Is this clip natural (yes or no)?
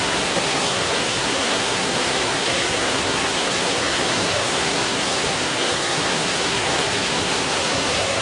no